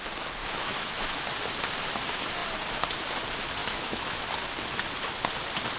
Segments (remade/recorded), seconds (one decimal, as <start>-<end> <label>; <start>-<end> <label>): 0.0-0.4 recorded; 0.4-1.2 remade; 1.2-3.6 recorded; 3.6-4.3 remade; 4.3-5.8 recorded